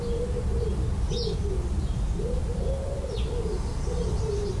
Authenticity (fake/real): real